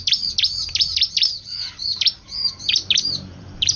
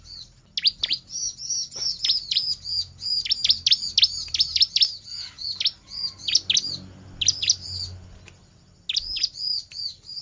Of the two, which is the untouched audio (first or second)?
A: second